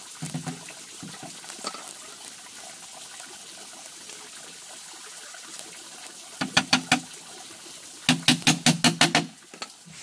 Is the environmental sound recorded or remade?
recorded